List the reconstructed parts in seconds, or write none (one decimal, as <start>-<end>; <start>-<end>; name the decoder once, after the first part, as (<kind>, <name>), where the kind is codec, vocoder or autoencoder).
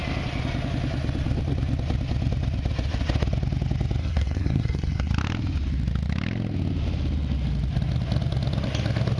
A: 4.0-5.1 (codec, SNAC)